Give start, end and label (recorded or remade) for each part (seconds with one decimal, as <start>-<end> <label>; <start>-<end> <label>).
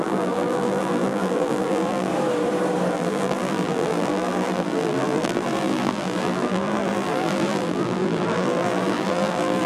0.0-2.1 remade; 2.1-2.9 recorded; 2.9-9.7 remade